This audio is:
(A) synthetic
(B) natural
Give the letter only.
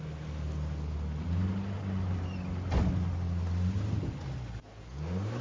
B